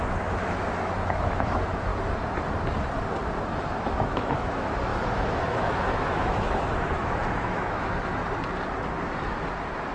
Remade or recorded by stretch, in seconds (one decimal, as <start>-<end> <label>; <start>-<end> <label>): 0.0-1.9 remade; 1.9-3.7 recorded; 3.7-8.2 remade; 8.2-9.9 recorded